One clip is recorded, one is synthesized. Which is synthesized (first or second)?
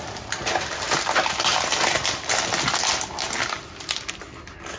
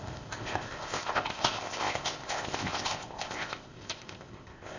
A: second